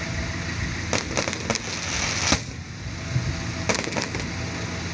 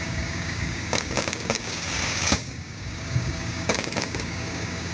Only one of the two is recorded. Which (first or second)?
first